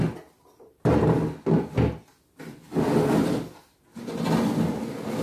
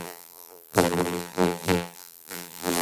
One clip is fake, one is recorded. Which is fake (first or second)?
second